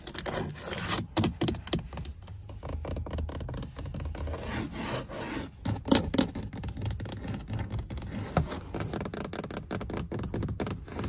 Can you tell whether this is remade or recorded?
recorded